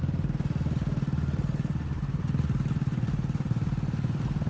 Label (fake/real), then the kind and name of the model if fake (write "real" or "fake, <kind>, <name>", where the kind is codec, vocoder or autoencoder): real